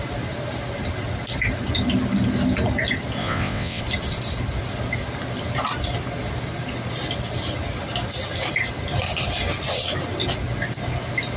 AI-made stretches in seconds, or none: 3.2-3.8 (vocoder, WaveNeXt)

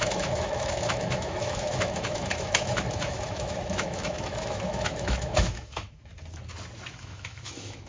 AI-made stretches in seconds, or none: 0.0-6.1 (autoencoder, DAC-VAE); 6.9-7.9

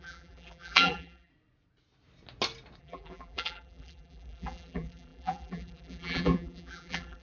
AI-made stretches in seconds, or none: 0.0-1.3 (vocoder, BigVGAN v2); 2.8-7.2